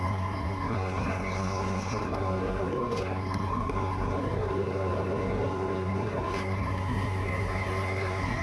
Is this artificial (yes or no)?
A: yes